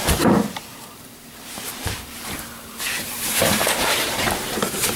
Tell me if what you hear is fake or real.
fake